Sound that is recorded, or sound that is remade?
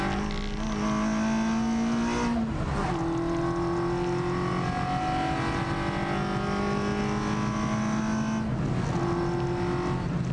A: recorded